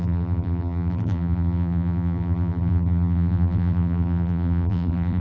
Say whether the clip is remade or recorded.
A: remade